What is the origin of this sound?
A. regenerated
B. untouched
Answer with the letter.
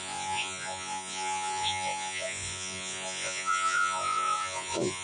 A